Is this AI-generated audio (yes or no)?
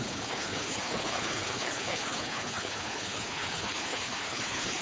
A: yes